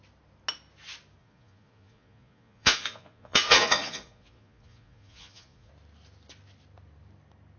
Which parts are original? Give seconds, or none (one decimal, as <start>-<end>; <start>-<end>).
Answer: 0.0-1.2; 5.7-7.6